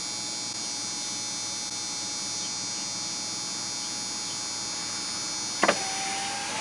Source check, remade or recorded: recorded